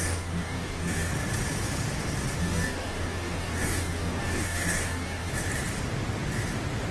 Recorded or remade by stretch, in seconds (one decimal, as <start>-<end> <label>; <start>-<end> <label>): 0.0-1.1 remade; 1.1-2.4 recorded; 2.4-5.3 remade; 5.3-6.9 recorded